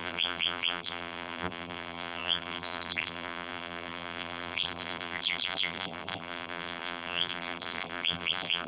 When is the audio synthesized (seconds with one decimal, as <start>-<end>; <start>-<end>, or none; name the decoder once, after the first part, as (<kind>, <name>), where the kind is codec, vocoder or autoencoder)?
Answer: 0.0-8.7 (vocoder, BigVGAN v2)